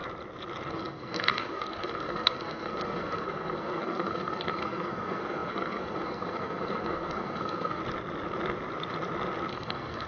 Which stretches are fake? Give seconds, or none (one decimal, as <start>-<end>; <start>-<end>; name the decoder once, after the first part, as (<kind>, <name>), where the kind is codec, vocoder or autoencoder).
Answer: 0.7-7.8 (codec, SNAC); 9.5-10.1